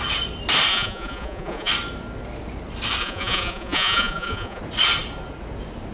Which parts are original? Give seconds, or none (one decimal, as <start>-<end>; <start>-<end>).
0.0-0.7; 1.7-3.0; 4.6-5.9